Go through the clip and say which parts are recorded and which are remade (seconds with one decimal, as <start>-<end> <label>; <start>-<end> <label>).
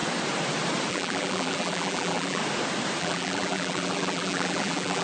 0.0-0.9 recorded; 0.9-2.4 remade; 2.4-3.0 recorded; 3.0-5.0 remade